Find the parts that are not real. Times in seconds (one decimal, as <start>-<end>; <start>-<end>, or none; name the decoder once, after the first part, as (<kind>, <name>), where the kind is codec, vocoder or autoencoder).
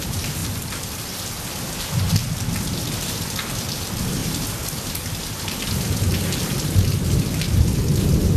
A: 0.4-1.6 (vocoder, BigVGAN v2); 4.2-5.9